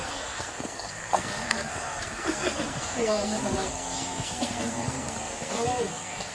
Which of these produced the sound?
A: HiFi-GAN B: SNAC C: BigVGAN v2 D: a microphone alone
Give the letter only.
B